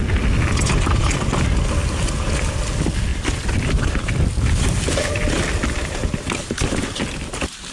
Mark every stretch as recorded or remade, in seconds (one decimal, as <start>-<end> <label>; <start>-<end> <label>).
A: 0.0-3.1 recorded; 3.1-7.3 remade; 7.3-7.7 recorded